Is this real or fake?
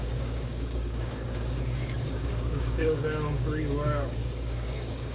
fake